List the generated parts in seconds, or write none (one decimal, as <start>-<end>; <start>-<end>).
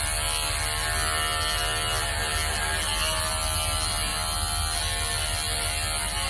none